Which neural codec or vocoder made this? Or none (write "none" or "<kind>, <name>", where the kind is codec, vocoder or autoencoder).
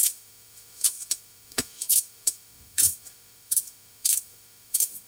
autoencoder, DAC-VAE